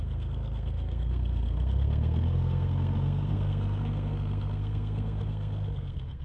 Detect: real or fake fake